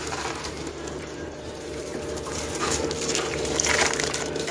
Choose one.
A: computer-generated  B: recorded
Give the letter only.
A